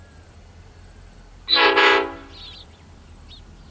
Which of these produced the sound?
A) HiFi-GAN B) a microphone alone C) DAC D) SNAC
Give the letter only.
B